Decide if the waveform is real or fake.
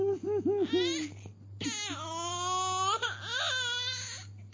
real